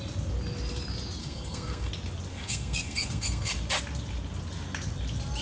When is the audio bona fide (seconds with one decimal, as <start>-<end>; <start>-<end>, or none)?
0.0-1.2; 1.9-2.3; 3.5-5.4